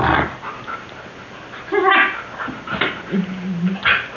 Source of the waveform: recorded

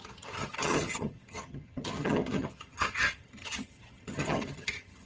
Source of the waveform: remade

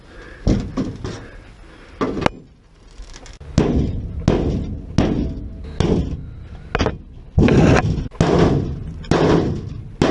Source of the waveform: recorded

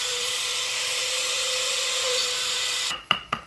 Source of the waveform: remade